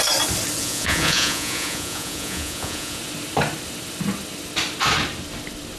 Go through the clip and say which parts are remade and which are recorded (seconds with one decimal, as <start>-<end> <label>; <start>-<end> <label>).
0.0-0.6 recorded; 0.6-3.0 remade; 3.0-5.8 recorded